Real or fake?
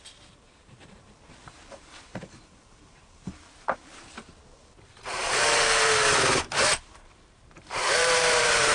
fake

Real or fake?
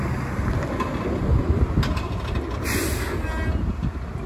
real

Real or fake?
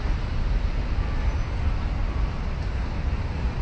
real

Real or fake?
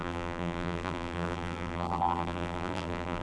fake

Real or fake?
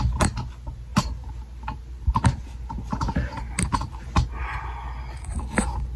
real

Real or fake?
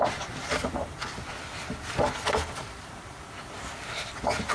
real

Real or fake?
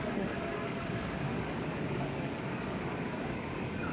fake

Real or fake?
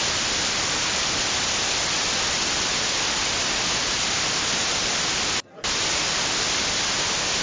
real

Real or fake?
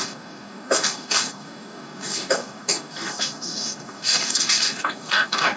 fake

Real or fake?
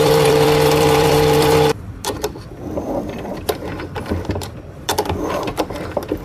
fake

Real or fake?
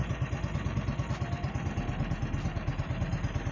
real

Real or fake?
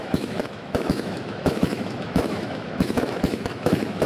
fake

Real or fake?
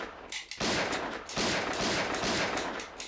real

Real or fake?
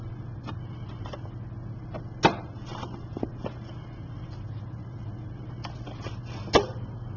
real